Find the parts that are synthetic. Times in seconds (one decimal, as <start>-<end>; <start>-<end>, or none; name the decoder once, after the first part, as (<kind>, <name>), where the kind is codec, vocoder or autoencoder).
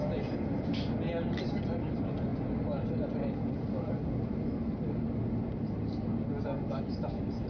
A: none